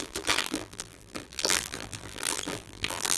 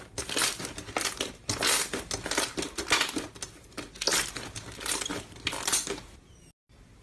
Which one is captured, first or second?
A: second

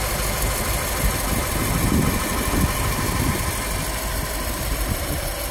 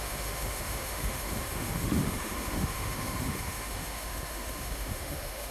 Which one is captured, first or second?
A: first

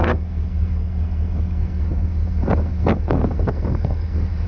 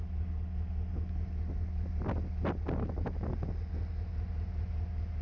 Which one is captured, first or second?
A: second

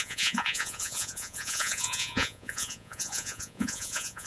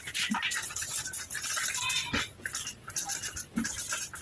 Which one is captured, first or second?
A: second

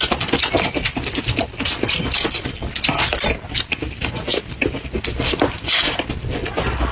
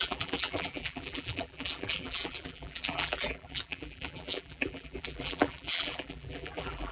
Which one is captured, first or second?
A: first